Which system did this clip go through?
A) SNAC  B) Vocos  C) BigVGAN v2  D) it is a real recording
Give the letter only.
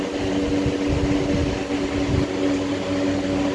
D